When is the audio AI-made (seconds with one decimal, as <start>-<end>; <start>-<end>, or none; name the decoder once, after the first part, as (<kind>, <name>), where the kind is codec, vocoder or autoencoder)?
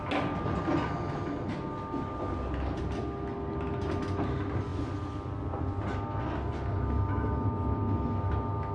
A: none